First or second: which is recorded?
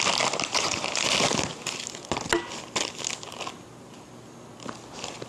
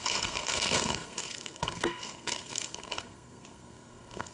first